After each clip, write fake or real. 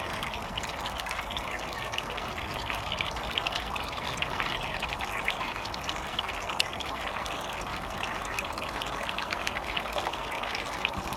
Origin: fake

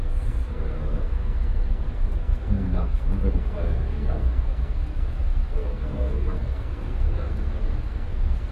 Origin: fake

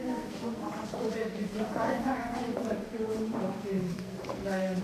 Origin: fake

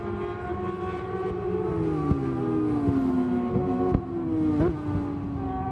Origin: real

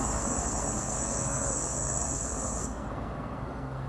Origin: fake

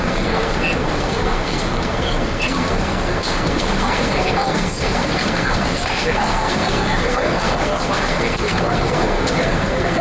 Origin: fake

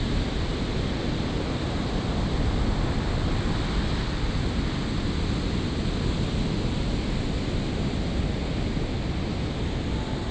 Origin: real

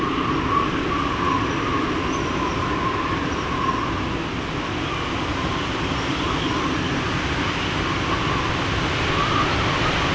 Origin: real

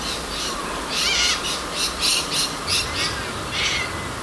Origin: real